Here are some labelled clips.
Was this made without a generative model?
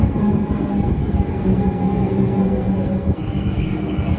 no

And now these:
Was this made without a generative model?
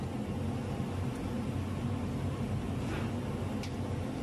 yes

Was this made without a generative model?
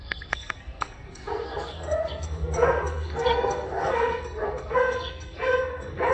no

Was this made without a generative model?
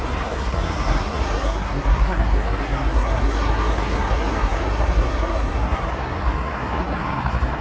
no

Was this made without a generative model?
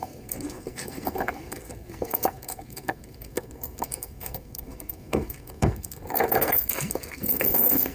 no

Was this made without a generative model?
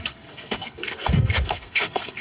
no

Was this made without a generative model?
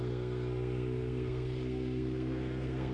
no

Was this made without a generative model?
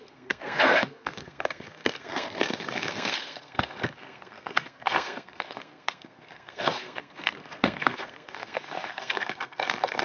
no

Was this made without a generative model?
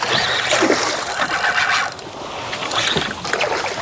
yes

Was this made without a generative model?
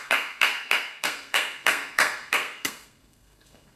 no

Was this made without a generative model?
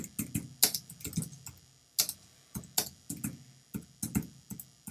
yes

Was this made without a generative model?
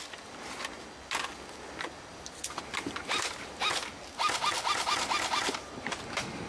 yes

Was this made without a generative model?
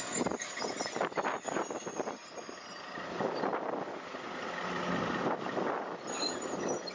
yes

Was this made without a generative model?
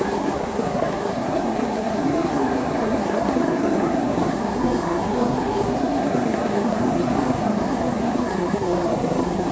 no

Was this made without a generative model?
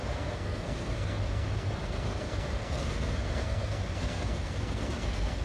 no